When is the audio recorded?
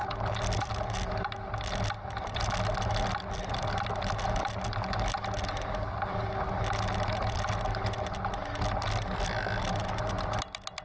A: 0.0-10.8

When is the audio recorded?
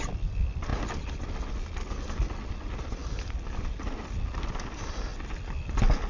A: 0.0-3.0; 4.0-5.1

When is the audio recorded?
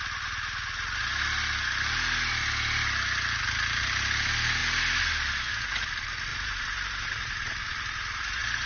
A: 0.0-6.3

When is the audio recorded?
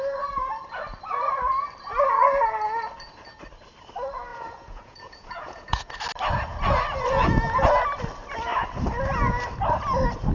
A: 0.0-4.3; 5.9-10.3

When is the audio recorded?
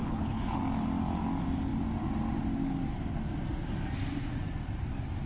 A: 0.6-5.3